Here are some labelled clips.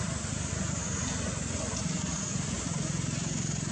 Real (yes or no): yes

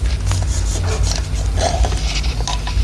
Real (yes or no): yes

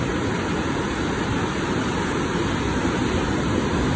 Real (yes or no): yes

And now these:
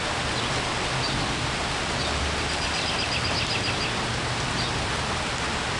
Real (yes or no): yes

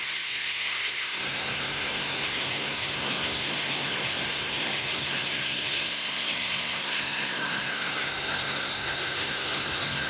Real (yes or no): no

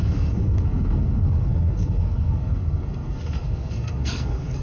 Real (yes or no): no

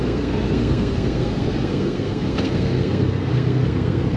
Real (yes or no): no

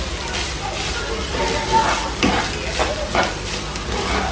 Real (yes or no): yes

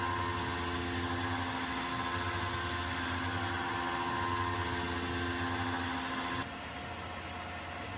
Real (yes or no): yes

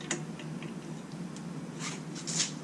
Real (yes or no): yes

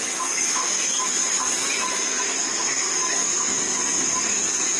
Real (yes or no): no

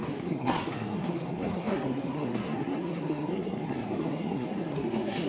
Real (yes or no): no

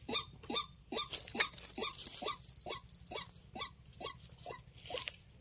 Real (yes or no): yes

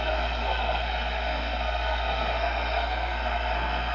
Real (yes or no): no